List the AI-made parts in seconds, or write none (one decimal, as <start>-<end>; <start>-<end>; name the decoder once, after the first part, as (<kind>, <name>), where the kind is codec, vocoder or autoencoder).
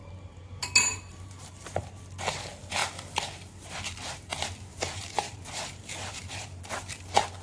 0.0-0.6 (vocoder, BigVGAN v2); 1.1-2.0; 4.7-6.7